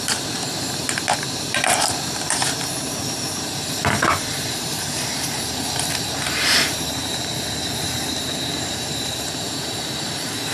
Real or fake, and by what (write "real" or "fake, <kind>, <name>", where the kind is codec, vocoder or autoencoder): fake, vocoder, BigVGAN v2